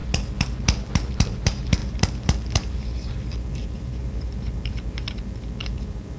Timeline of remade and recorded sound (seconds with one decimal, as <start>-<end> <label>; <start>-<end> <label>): 0.0-1.1 recorded; 1.1-6.2 remade